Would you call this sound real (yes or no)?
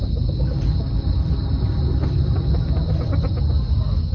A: yes